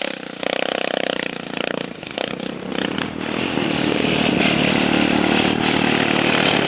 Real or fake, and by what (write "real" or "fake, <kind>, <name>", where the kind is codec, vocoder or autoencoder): fake, vocoder, BigVGAN v2